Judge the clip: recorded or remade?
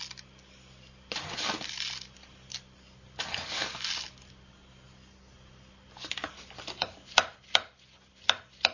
recorded